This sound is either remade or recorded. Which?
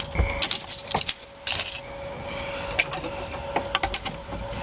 recorded